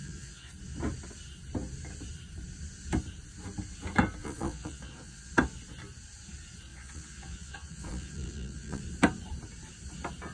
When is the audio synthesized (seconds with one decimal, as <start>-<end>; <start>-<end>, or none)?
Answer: 0.0-0.5; 4.2-5.3; 6.7-8.8